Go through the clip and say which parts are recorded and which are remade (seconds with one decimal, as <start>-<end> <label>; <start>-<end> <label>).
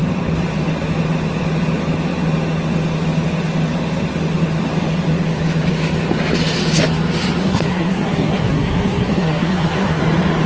0.0-7.4 recorded; 7.4-10.0 remade; 10.0-10.5 recorded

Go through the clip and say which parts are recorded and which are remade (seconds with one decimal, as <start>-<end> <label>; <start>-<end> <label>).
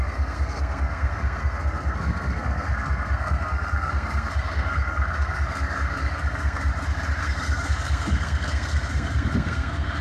0.0-6.7 remade; 6.7-7.2 recorded; 7.2-10.0 remade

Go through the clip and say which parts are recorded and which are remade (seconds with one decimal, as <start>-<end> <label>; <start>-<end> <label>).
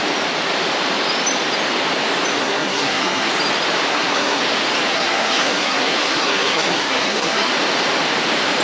0.0-2.4 recorded; 2.4-3.3 remade; 3.3-3.9 recorded; 3.9-4.4 remade; 4.4-4.9 recorded; 4.9-7.5 remade; 7.5-8.6 recorded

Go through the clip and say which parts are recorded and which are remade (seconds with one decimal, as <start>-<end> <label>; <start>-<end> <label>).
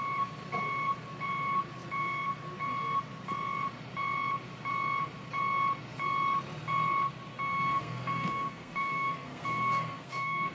0.0-7.3 recorded; 7.3-10.5 remade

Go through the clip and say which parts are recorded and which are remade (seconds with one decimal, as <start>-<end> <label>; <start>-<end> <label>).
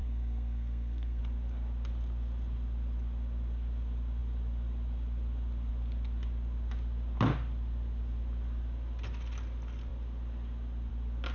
0.0-1.2 remade; 1.2-11.3 recorded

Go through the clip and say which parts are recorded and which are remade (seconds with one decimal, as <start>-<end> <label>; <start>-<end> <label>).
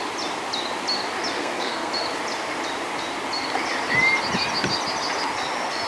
0.0-1.4 recorded; 1.4-1.9 remade; 1.9-5.9 recorded